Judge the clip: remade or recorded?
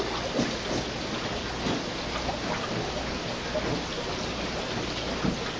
recorded